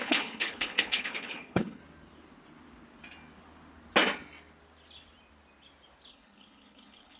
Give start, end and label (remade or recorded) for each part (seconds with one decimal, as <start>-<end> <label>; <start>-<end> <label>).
0.0-1.8 remade; 1.8-6.1 recorded; 6.1-7.2 remade